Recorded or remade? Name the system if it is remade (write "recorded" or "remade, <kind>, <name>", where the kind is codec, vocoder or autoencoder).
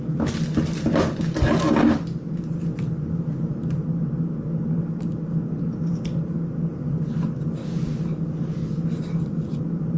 recorded